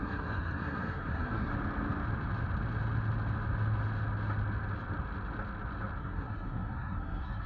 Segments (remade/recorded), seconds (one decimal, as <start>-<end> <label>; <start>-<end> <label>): 0.0-1.5 remade; 1.5-6.0 recorded; 6.0-7.5 remade